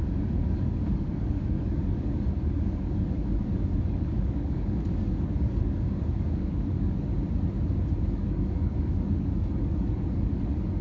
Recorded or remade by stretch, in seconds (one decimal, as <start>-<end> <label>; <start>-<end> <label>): 0.0-7.1 remade; 7.1-8.0 recorded; 8.0-10.8 remade